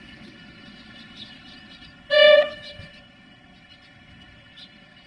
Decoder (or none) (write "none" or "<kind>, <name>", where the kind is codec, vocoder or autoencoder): vocoder, WaveNeXt